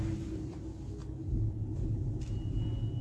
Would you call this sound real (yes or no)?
yes